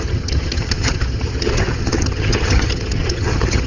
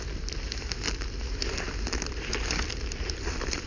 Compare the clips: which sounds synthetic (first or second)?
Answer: first